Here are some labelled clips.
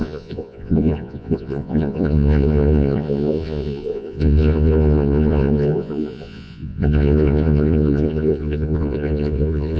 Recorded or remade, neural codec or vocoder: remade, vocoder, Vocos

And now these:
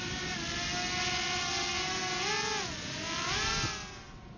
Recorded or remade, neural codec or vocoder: recorded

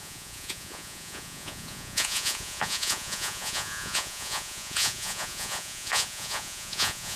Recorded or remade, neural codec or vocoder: remade, vocoder, Vocos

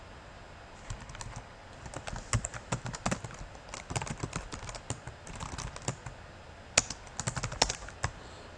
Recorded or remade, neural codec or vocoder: recorded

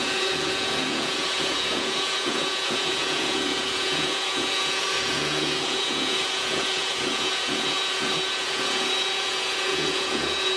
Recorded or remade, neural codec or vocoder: remade, vocoder, Vocos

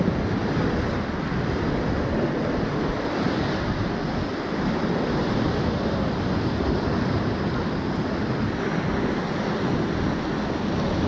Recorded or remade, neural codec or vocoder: recorded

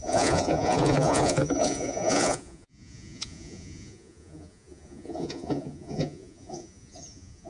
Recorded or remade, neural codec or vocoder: remade, vocoder, Vocos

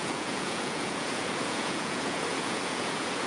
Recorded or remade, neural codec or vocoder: remade, vocoder, Vocos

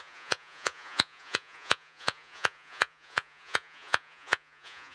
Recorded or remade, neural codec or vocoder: remade, vocoder, Vocos